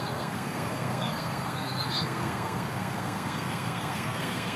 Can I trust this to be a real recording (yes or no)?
no